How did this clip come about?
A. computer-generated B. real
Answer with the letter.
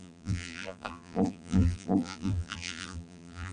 A